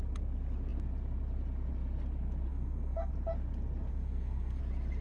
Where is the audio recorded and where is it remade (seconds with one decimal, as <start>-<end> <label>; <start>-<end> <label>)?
0.0-2.5 recorded; 2.5-3.1 remade; 3.1-3.9 recorded; 3.9-4.6 remade; 4.6-5.0 recorded